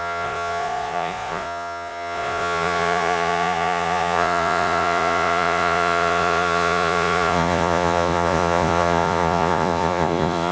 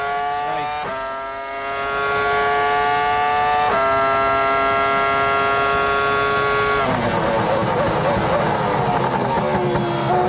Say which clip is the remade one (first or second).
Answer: first